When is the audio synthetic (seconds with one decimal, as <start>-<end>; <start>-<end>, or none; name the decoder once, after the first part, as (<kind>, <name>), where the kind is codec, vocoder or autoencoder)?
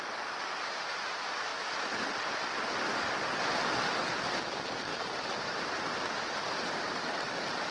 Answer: 4.9-7.3 (vocoder, BigVGAN v2)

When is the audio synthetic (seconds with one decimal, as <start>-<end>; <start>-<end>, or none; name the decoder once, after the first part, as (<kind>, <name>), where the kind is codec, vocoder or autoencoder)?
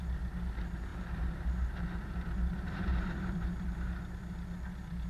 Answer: 0.9-4.0 (vocoder, BigVGAN v2)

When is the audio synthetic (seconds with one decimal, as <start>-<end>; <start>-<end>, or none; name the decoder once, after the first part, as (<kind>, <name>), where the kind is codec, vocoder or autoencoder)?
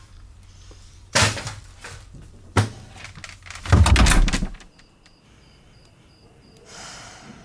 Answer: 0.0-2.5 (vocoder, BigVGAN v2)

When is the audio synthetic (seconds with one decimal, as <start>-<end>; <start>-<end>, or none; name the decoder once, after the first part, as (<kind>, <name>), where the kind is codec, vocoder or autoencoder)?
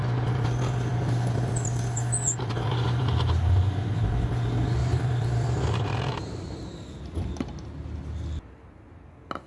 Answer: 4.8-7.0 (vocoder, BigVGAN v2)